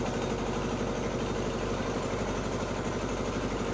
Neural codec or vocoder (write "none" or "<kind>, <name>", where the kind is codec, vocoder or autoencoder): none